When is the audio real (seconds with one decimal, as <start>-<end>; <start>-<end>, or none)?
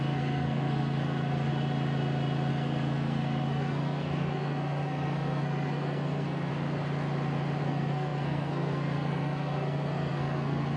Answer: 1.5-2.5; 6.5-7.6